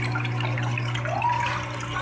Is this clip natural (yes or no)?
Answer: yes